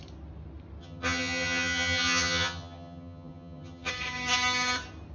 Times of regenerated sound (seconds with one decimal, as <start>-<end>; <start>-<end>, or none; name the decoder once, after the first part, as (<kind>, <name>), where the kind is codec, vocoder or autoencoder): 0.8-3.9 (vocoder, HiFi-GAN)